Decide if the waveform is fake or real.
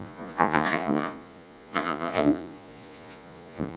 fake